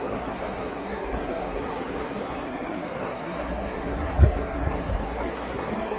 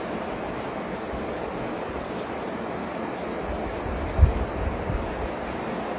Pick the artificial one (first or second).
first